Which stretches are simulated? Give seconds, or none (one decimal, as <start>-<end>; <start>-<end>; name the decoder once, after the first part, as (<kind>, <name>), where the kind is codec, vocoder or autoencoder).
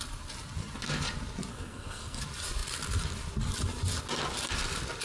1.5-2.2 (codec, SNAC)